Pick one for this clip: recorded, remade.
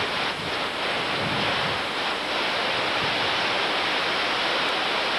recorded